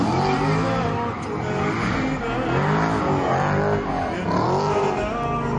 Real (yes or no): yes